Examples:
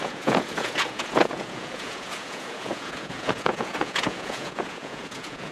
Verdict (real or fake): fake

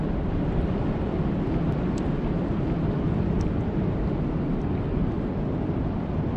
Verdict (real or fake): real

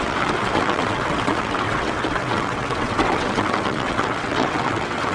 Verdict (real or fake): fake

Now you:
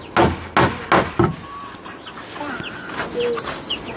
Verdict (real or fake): real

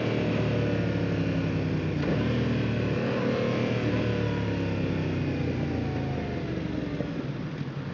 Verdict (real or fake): real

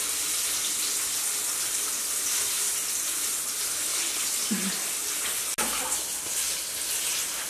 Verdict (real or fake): real